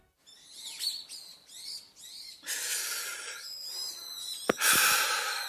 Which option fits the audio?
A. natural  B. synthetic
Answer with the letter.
A